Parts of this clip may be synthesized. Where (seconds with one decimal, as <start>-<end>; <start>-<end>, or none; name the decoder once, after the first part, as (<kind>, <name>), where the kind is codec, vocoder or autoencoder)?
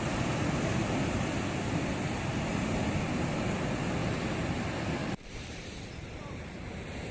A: 5.0-6.3 (vocoder, BigVGAN v2)